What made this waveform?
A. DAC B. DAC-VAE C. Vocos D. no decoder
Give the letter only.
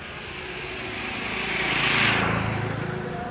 D